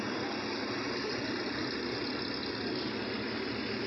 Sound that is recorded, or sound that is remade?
recorded